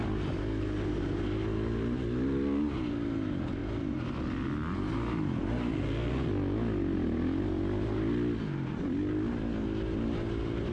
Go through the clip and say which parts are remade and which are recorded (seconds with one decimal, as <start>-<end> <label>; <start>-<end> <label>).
0.0-10.7 recorded